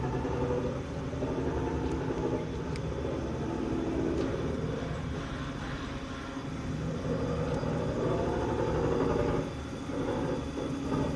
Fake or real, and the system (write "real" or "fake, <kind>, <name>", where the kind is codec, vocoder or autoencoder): real